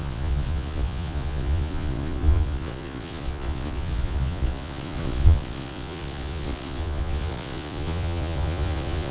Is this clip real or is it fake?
fake